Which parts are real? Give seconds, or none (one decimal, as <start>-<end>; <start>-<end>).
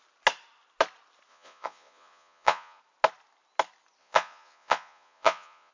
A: 0.0-1.3; 2.8-4.0